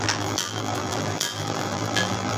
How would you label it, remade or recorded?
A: remade